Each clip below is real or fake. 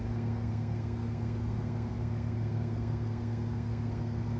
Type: fake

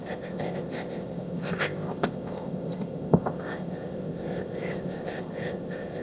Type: fake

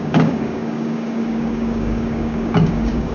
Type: fake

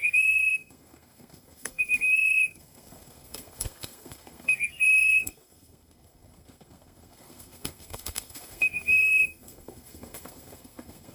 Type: fake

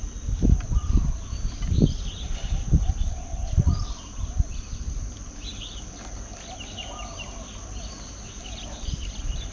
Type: fake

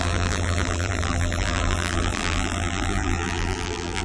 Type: fake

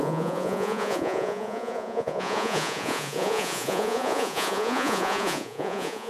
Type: fake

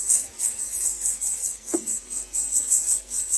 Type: fake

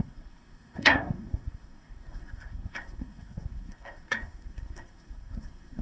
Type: fake